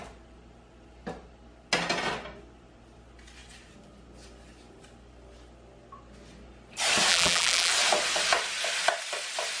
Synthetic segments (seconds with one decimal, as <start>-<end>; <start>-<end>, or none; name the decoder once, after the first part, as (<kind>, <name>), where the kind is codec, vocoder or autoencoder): 7.1-7.7 (vocoder, BigVGAN v2)